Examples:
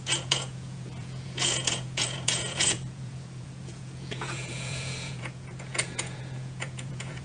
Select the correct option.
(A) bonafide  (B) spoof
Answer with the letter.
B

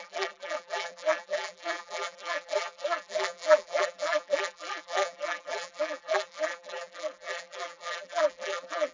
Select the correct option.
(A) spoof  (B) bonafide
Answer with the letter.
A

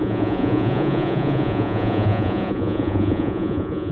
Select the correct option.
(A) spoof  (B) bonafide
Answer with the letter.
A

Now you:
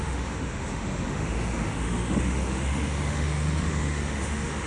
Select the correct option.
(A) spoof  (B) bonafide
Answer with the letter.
A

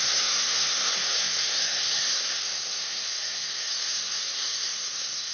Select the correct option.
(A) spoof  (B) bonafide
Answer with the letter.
A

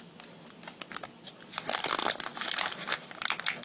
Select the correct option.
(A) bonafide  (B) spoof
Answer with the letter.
A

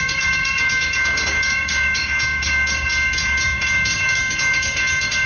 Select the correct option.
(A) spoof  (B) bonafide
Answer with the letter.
A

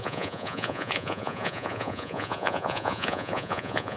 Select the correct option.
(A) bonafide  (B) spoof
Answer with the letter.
B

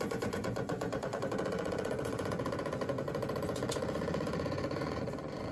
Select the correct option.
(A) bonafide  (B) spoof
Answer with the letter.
B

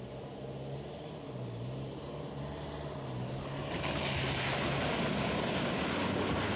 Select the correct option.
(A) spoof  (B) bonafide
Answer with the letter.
B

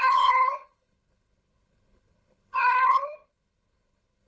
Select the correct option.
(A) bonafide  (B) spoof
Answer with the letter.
B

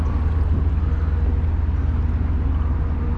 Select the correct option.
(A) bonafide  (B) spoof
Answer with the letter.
A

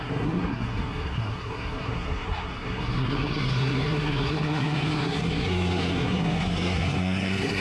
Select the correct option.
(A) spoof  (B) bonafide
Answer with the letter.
A